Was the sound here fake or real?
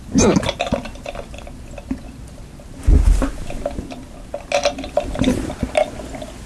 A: real